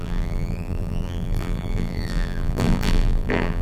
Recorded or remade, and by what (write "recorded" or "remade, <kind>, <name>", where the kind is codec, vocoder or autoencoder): remade, vocoder, BigVGAN v2